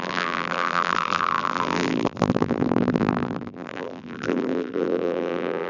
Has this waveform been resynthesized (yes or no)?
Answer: yes